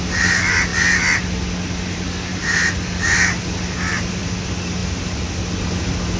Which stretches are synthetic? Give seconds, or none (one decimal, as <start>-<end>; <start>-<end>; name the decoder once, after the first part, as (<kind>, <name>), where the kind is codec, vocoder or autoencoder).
none